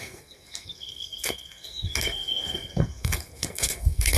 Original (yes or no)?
no